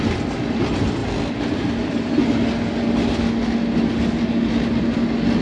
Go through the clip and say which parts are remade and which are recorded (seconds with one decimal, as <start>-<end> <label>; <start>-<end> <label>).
0.0-5.4 recorded